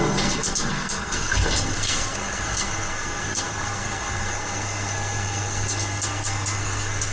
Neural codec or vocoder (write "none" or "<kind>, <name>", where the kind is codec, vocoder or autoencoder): codec, SNAC